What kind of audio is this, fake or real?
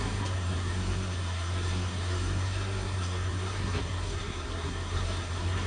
fake